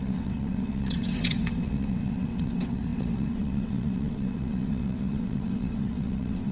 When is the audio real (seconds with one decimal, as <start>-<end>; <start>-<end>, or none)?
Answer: none